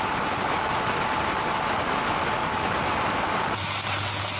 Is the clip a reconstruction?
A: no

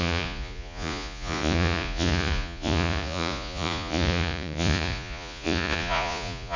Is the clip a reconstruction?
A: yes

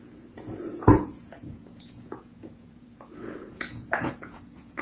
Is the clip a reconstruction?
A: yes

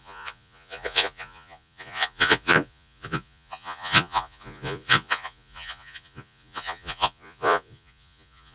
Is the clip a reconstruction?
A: yes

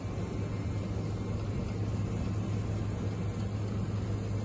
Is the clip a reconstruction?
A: no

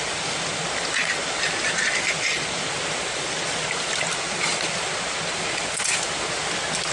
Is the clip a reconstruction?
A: no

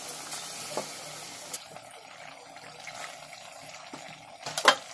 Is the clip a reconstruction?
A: no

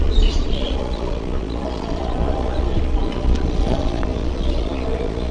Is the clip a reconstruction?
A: yes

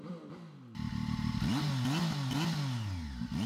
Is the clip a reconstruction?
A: no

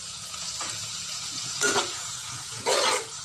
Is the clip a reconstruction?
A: yes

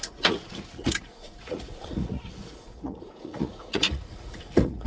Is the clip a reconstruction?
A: yes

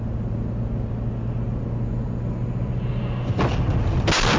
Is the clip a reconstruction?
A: no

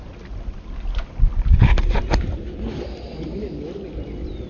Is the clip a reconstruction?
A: no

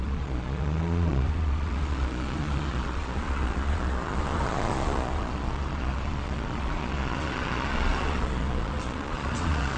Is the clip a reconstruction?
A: yes